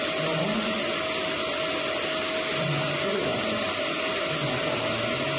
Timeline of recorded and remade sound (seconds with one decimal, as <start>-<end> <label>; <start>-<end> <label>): 0.0-3.3 recorded; 3.3-3.8 remade; 3.8-5.4 recorded